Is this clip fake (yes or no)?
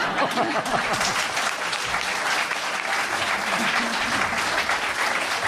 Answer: no